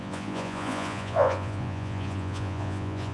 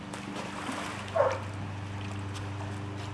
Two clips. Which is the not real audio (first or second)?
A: first